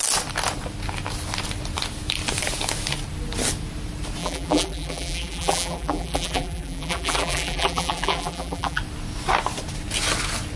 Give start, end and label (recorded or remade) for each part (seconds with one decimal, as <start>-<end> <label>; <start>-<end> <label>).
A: 0.0-4.2 recorded; 4.2-8.8 remade; 8.8-10.6 recorded